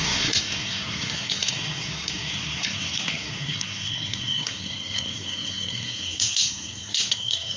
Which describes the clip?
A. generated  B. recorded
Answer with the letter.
A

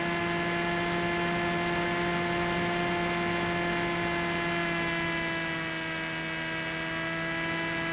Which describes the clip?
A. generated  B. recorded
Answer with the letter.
B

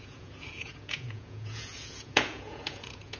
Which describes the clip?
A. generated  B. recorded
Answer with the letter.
A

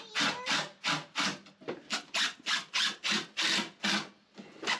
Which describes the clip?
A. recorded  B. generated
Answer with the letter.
A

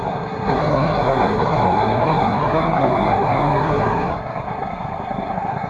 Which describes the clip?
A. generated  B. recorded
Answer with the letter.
A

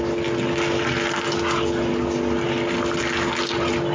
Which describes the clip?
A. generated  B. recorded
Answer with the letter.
B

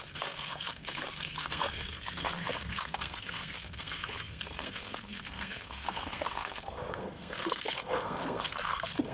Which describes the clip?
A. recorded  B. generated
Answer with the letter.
B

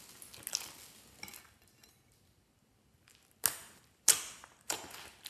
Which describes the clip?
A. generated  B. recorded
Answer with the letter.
B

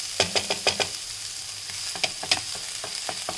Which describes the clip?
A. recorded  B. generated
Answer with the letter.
A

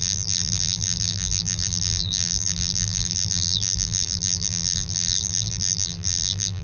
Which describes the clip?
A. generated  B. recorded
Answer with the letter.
A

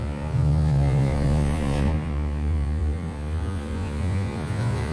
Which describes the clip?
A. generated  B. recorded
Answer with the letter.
A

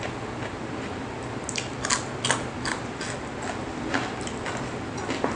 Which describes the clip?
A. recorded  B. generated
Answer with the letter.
A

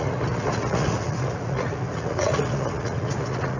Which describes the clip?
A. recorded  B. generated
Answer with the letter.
B